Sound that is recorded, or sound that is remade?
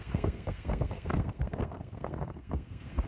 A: remade